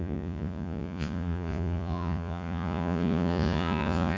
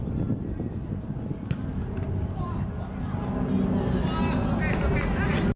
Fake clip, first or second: first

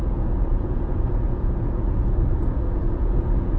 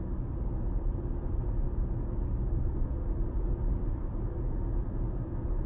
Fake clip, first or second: first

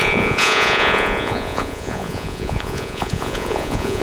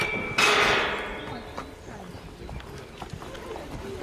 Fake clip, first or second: first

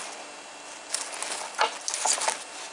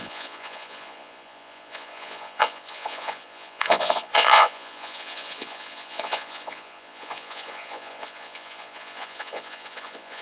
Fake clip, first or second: second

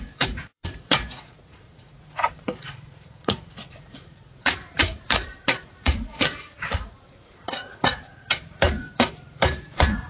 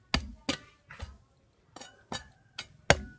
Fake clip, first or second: first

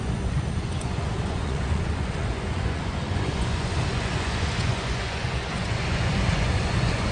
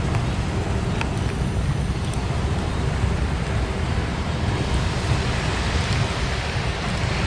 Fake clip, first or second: first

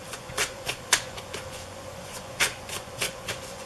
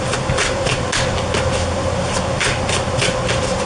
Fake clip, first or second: first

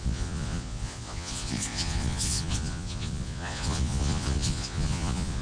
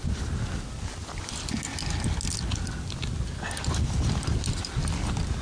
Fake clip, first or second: first